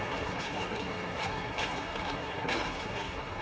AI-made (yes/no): yes